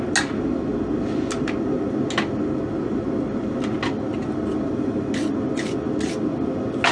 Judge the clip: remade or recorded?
recorded